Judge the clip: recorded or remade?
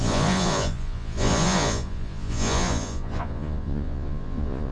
remade